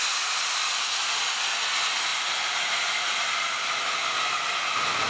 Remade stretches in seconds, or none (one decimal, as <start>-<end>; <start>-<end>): none